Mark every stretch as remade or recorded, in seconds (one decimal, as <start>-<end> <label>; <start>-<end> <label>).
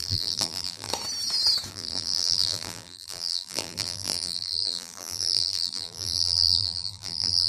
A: 0.0-0.9 remade; 0.9-1.7 recorded; 1.7-7.5 remade